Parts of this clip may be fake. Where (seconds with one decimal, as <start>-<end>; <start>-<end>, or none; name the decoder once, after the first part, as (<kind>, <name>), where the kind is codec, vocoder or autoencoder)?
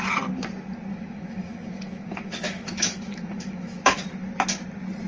0.9-4.0 (autoencoder, DAC-VAE)